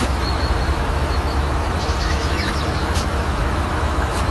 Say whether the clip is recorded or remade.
remade